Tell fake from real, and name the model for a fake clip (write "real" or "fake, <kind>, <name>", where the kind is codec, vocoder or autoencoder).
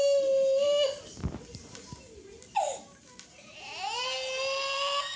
real